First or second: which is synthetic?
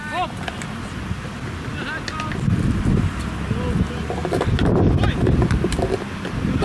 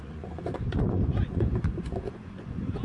second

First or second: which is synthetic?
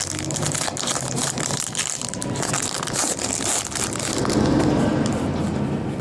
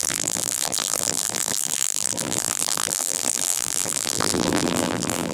second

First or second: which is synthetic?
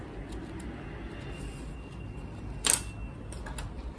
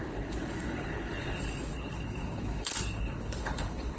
second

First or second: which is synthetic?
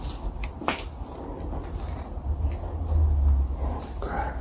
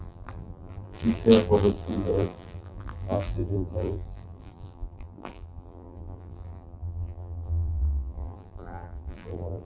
second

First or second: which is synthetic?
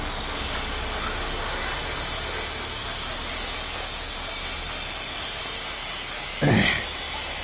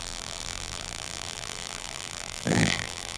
second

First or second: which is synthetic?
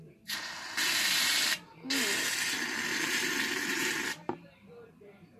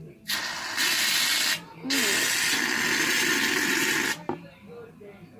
first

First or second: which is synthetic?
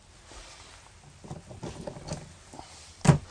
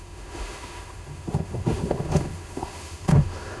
second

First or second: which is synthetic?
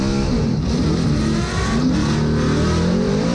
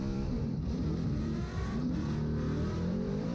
second